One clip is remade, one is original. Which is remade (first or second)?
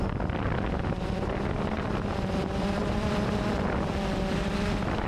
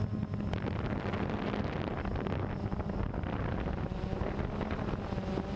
first